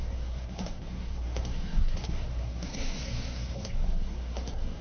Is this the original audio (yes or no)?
no